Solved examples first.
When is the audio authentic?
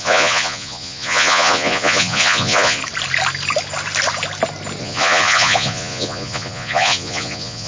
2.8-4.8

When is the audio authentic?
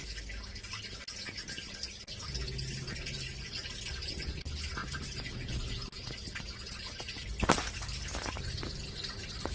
0.0-9.5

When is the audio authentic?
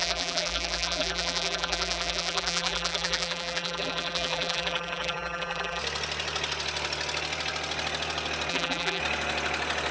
5.8-8.5; 9.0-9.9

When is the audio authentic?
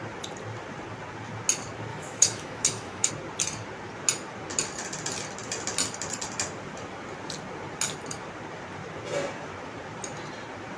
0.0-1.9; 3.1-10.8